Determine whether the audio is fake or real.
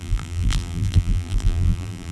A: fake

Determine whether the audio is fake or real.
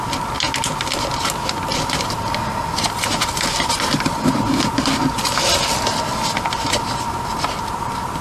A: real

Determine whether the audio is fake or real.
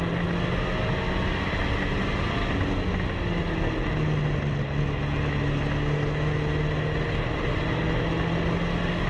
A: real